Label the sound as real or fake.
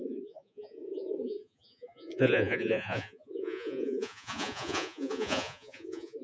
fake